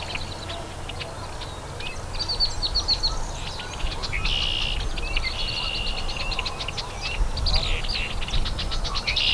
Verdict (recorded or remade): recorded